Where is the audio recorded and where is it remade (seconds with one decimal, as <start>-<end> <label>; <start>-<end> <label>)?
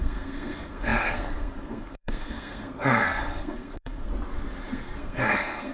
0.0-4.1 remade; 4.1-4.7 recorded; 4.7-5.7 remade